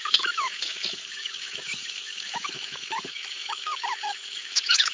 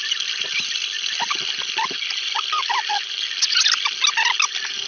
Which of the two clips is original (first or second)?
second